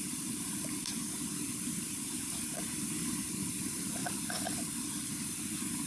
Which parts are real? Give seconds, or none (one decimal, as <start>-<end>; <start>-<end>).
4.0-5.1